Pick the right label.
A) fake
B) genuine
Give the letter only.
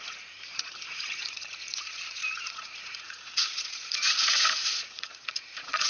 A